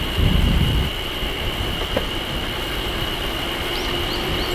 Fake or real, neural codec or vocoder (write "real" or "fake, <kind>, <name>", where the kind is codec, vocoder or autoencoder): real